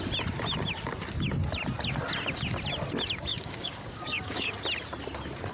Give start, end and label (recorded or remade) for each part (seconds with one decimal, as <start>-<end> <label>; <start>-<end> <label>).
0.0-3.3 recorded; 3.3-4.5 remade; 4.5-5.5 recorded